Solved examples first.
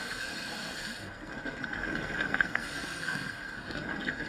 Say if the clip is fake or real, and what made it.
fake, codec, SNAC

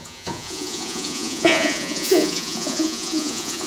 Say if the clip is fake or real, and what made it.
fake, vocoder, Vocos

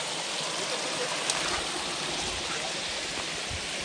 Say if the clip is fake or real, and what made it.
real